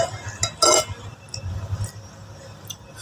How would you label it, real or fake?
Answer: real